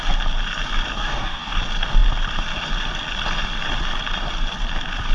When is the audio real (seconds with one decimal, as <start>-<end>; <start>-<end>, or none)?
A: 0.0-1.0; 1.6-5.1

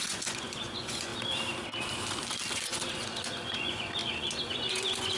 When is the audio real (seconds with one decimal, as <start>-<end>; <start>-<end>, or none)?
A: 1.1-2.5